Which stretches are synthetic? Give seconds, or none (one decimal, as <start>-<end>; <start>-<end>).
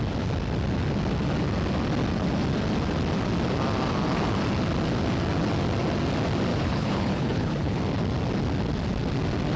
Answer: 6.5-7.8